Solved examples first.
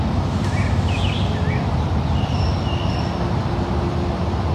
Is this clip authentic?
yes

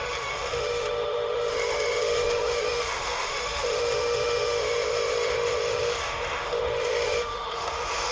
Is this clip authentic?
no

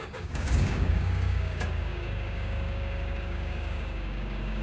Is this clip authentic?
no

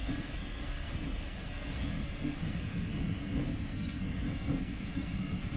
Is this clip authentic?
no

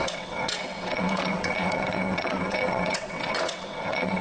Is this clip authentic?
no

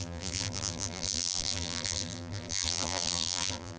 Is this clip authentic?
no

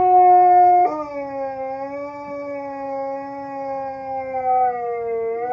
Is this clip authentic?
yes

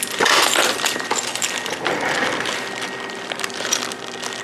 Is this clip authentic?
yes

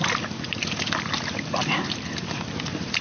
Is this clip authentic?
yes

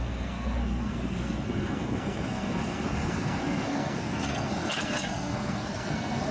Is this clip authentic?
no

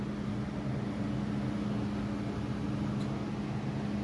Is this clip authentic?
yes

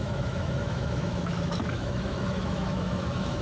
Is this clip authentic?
no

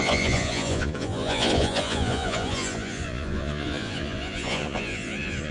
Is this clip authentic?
no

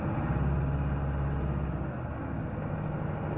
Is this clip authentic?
yes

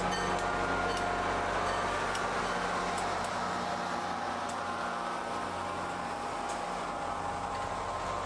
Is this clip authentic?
yes